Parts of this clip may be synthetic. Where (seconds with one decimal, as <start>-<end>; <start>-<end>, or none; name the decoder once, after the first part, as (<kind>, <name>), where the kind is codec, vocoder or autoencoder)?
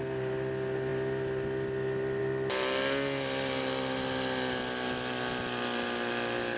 none